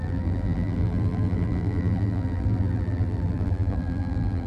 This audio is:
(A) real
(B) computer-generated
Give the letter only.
B